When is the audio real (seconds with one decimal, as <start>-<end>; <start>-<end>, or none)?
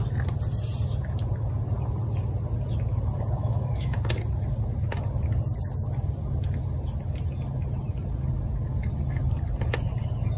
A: 0.0-3.4; 4.0-10.4